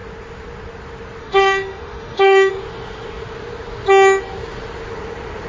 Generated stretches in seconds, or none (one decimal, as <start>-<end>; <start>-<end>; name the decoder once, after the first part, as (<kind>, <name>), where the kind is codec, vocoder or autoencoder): 1.2-2.5 (autoencoder, DAC-VAE)